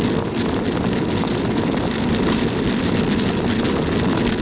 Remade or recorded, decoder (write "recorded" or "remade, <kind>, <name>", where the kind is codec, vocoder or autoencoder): recorded